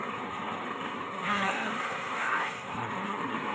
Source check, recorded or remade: remade